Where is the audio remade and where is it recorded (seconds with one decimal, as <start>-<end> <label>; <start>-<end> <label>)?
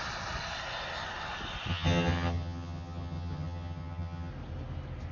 0.0-1.7 recorded; 1.7-4.3 remade; 4.3-5.1 recorded